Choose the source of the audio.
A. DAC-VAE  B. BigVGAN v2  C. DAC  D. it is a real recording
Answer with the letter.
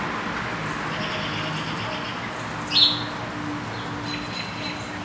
D